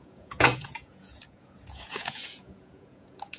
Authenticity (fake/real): fake